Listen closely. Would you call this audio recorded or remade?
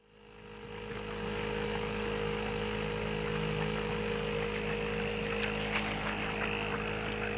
recorded